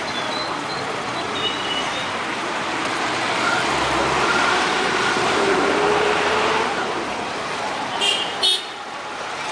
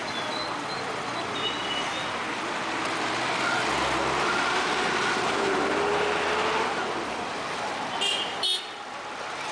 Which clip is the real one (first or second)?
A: second